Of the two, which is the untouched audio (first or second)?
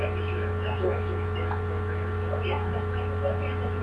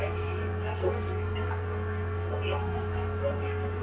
first